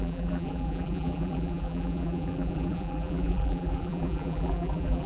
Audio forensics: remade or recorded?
remade